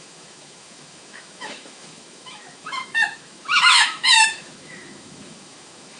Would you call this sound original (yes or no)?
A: no